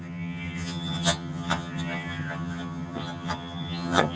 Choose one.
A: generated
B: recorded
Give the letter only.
A